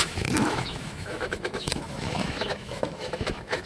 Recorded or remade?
remade